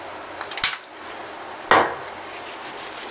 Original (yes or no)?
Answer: yes